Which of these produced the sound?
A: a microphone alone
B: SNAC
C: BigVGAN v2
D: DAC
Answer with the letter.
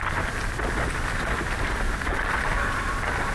A